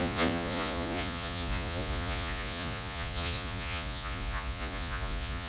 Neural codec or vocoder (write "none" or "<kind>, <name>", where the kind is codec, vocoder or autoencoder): vocoder, Vocos